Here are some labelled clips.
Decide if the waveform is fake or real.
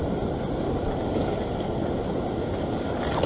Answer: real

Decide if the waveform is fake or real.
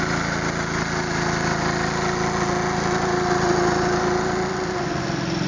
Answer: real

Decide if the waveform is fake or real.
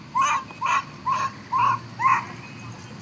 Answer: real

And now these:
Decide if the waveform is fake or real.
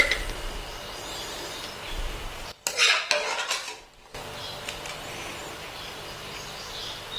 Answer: real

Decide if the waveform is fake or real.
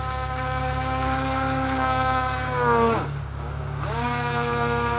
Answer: fake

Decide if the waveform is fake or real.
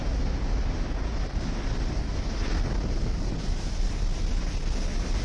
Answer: real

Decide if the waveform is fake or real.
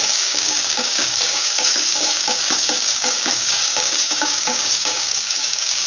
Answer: fake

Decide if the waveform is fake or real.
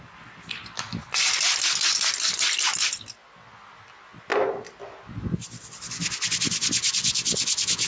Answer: real